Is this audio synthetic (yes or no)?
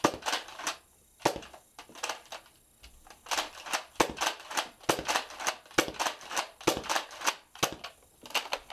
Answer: no